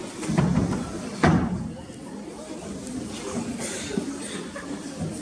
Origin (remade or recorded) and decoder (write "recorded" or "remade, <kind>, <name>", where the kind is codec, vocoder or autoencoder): recorded